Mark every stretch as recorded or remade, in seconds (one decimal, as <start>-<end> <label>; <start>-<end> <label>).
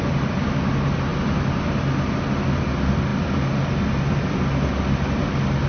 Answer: 0.0-5.7 recorded